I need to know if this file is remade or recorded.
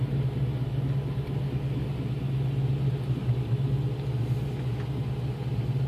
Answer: recorded